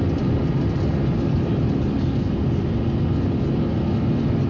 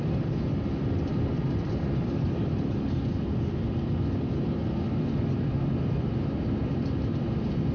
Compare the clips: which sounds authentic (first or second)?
first